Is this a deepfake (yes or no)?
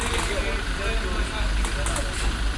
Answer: no